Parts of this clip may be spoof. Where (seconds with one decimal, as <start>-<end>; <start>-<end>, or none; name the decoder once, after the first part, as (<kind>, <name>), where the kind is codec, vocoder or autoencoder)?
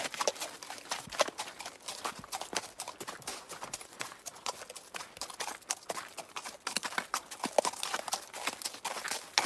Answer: 3.3-4.6 (vocoder, Vocos)